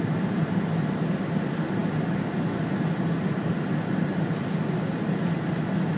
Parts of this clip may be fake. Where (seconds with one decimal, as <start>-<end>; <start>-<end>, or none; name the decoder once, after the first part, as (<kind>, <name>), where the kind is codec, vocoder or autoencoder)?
none